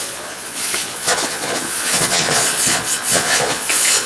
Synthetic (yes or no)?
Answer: yes